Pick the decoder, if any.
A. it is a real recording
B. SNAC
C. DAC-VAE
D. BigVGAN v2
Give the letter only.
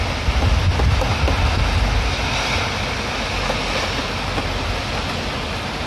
A